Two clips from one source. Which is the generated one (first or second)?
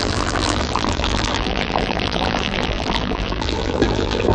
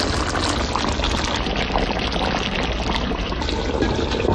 first